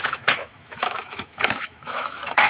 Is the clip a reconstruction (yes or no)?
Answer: yes